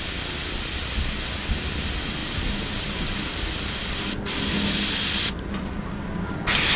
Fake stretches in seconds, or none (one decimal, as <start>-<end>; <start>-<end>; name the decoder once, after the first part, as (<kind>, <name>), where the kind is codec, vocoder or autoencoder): 2.2-6.3 (vocoder, BigVGAN v2)